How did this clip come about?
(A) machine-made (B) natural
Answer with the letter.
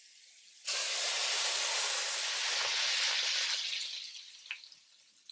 B